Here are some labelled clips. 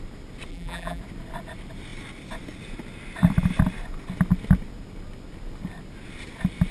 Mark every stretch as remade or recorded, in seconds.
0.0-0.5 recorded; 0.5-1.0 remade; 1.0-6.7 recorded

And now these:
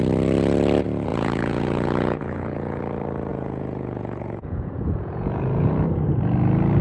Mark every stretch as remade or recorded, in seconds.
0.0-1.1 recorded; 1.1-2.8 remade; 2.8-3.3 recorded; 3.3-5.7 remade; 5.7-6.8 recorded

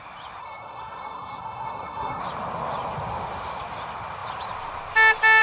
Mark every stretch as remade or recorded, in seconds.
0.0-0.4 recorded; 0.4-2.2 remade; 2.2-5.4 recorded

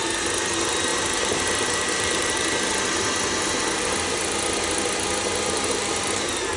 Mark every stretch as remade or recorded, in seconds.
0.0-0.9 recorded; 0.9-3.0 remade; 3.0-6.6 recorded

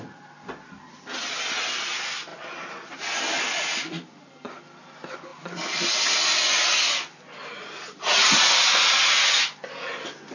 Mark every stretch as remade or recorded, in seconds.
0.0-10.3 recorded

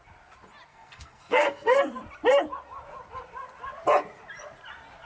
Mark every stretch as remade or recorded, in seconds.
0.0-0.7 recorded; 0.7-1.9 remade; 1.9-5.1 recorded